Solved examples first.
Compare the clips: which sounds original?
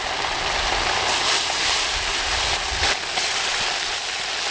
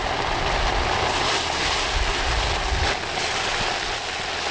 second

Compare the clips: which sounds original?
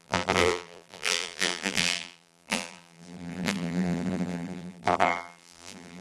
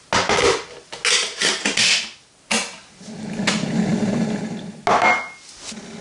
second